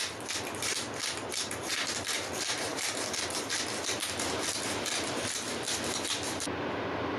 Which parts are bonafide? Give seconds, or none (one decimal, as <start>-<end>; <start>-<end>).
2.7-4.3